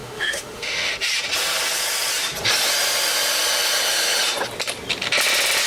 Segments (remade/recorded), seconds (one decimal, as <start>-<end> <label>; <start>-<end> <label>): 0.0-0.9 remade; 0.9-5.7 recorded